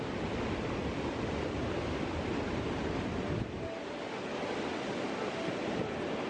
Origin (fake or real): real